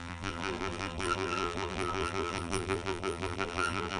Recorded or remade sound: remade